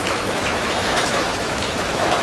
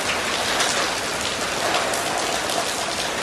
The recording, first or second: second